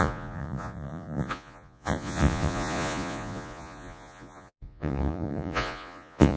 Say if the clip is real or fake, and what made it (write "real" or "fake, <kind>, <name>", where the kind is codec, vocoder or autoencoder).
fake, vocoder, Vocos